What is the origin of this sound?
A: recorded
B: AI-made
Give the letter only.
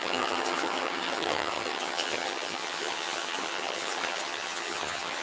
B